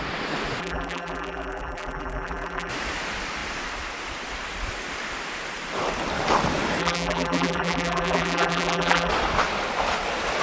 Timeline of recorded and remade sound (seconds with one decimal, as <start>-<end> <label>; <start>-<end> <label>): 0.0-0.6 recorded; 0.6-2.7 remade; 2.7-6.8 recorded; 6.8-9.1 remade; 9.1-10.4 recorded